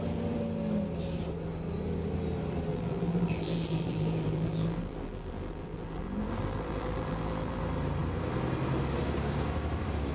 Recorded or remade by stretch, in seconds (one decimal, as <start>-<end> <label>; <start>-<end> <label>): 0.0-2.7 recorded; 2.7-7.6 remade; 7.6-10.1 recorded